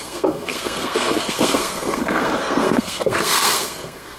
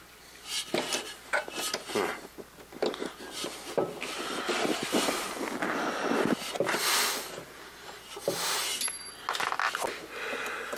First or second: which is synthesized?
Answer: first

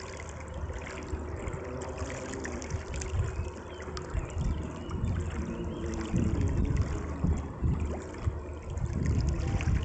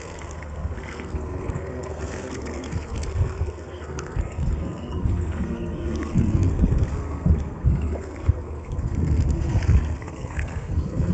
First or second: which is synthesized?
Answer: second